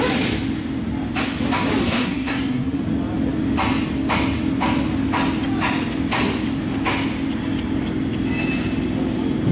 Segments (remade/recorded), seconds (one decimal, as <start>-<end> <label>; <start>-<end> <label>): 0.0-1.8 recorded; 1.8-2.8 remade; 2.8-9.5 recorded